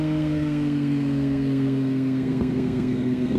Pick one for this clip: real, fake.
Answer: fake